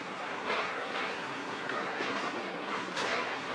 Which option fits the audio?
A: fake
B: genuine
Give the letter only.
A